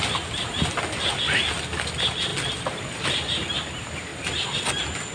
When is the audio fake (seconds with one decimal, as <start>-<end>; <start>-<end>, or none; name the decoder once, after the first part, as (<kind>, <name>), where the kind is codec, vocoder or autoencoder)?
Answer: none